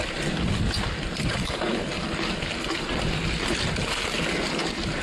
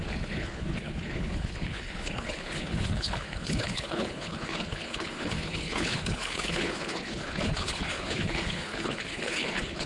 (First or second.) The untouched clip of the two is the first